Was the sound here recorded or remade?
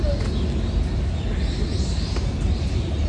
recorded